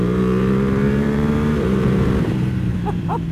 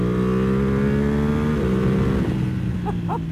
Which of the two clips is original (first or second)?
second